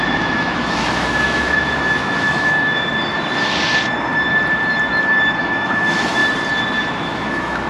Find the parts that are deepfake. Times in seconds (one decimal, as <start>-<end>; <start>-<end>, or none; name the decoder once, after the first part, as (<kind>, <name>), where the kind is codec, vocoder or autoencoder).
0.0-2.9 (autoencoder, DAC-VAE); 5.4-6.2; 6.9-7.7